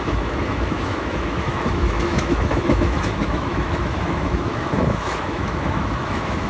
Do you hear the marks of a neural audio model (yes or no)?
yes